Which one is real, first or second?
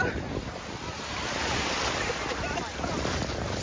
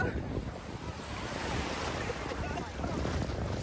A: first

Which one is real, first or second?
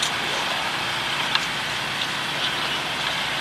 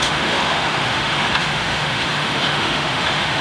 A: first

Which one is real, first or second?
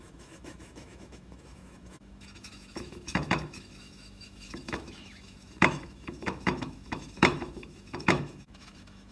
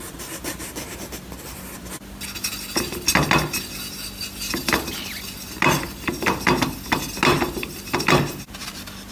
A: second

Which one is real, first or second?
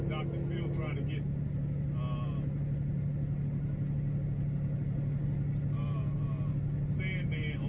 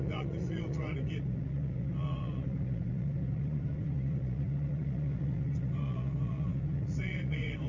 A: first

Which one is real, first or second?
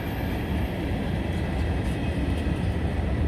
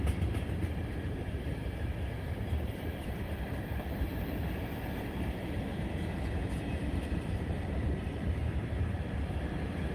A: first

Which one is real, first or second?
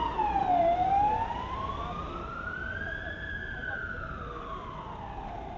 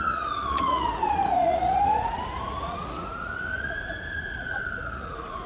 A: first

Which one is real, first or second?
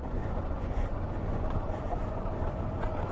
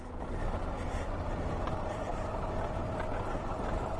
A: second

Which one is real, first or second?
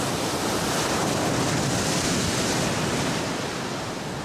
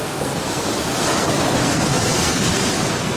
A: first